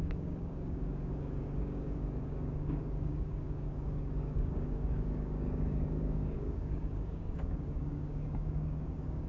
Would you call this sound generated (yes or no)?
yes